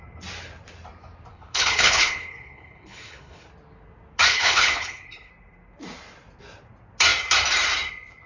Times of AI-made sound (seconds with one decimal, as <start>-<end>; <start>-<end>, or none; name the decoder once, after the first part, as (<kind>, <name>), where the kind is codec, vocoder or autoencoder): 1.3-3.5 (codec, HILCodec); 4.3-5.3